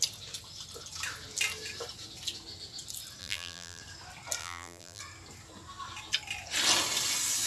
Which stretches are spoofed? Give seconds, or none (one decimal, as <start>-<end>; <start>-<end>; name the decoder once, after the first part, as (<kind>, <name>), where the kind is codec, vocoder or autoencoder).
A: 3.2-3.8 (vocoder, BigVGAN v2); 4.4-5.0